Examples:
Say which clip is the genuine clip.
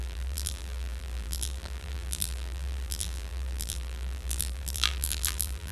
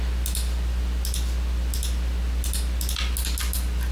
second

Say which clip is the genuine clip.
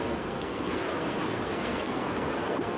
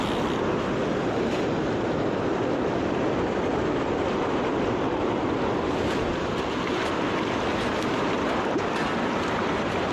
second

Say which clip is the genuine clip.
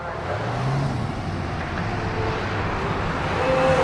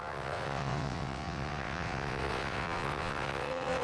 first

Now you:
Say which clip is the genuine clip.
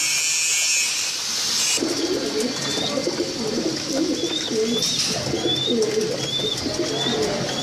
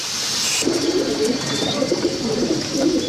first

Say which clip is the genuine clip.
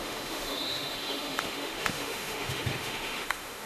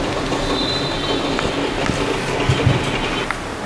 second